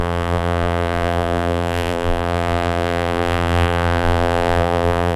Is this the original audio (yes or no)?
no